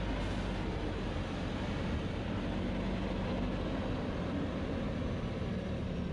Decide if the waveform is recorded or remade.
recorded